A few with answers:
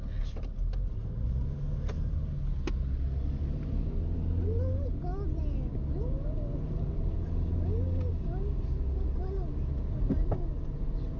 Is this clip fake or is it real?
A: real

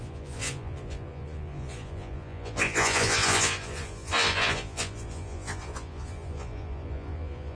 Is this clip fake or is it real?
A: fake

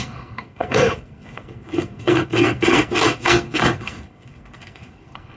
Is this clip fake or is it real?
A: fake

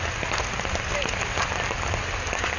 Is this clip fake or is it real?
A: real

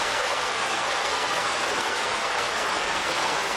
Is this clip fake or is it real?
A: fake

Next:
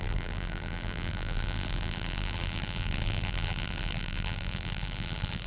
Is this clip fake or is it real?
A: fake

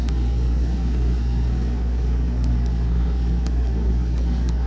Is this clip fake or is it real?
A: fake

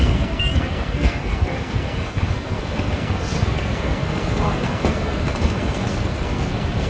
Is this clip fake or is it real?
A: fake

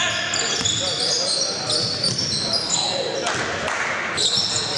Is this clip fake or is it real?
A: real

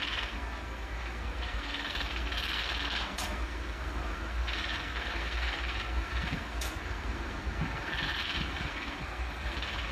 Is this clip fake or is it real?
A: fake